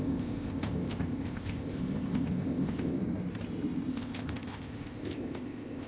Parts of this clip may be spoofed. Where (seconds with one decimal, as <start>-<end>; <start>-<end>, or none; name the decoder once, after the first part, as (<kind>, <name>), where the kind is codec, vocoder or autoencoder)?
0.0-3.0 (codec, ZipCodec); 3.9-5.9